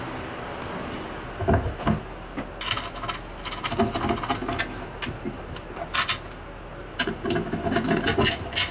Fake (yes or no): no